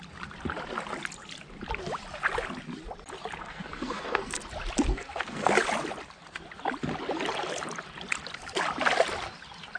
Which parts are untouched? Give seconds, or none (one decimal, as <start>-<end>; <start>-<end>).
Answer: 0.0-3.4; 4.4-4.9; 5.5-9.8